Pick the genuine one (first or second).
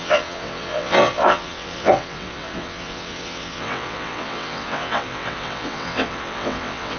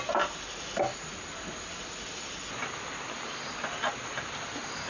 second